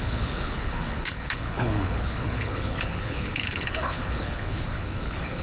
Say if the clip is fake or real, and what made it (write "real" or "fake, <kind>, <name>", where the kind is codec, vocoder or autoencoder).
fake, codec, HILCodec